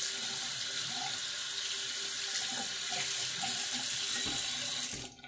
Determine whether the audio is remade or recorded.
recorded